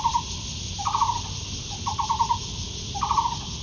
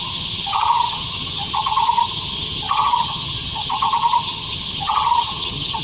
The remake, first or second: second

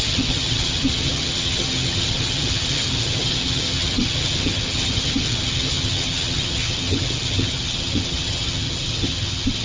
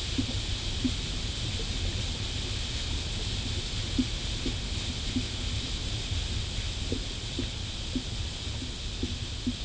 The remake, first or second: first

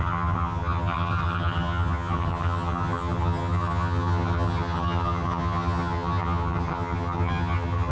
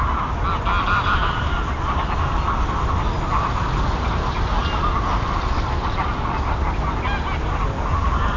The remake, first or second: first